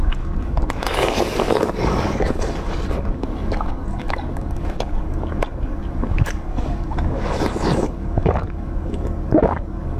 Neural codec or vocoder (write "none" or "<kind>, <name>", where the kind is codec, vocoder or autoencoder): codec, DAC